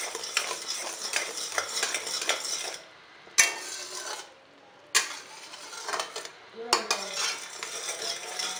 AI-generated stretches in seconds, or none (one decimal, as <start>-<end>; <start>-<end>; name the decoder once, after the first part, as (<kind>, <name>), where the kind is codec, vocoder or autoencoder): 0.8-1.6 (vocoder, BigVGAN v2)